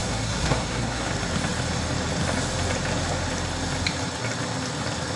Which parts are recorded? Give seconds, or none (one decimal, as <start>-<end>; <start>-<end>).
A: 1.1-5.2